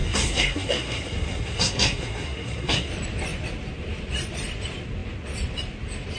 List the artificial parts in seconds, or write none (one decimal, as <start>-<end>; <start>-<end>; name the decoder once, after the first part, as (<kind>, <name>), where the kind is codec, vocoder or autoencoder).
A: 0.0-2.9 (codec, SNAC)